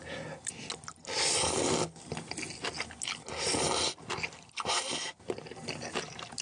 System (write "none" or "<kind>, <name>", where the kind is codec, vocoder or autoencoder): none